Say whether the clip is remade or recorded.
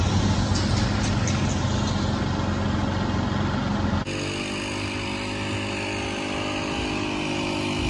recorded